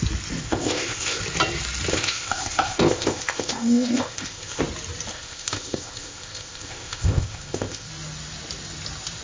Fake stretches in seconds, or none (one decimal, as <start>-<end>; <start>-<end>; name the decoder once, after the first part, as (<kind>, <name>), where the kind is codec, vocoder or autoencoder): 0.4-1.2 (codec, ZipCodec); 1.9-4.6; 5.1-7.9